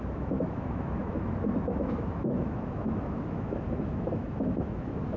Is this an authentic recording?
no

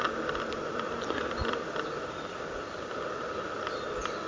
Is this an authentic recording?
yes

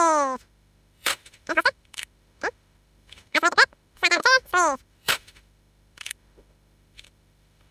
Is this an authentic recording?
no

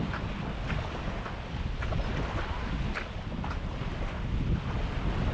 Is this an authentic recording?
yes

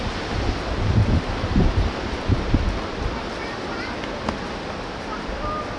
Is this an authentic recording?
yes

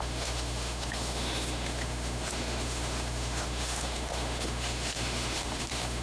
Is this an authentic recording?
no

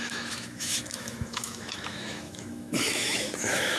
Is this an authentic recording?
no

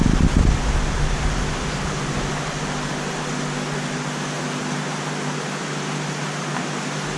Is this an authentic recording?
yes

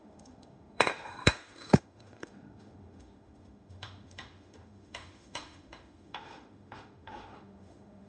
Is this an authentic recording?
no